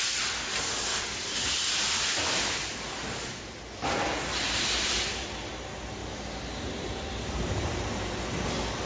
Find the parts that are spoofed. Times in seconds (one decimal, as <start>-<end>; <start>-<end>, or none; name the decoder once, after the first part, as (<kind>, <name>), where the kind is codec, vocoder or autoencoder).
6.0-8.2 (vocoder, BigVGAN v2)